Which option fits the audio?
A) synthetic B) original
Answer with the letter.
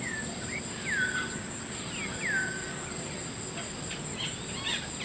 B